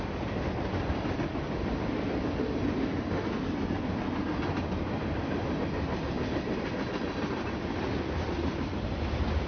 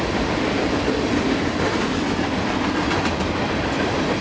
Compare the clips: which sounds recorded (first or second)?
first